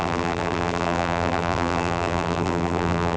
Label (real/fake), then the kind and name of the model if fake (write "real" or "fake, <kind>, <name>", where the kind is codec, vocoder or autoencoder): fake, vocoder, BigVGAN v2